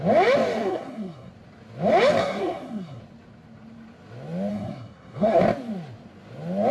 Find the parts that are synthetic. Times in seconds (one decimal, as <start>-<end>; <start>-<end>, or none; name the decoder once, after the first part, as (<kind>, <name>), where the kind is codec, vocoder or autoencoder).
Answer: 0.6-1.3 (codec, SNAC); 2.2-3.0; 4.5-5.4